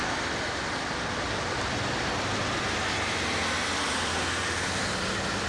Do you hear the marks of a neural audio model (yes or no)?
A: no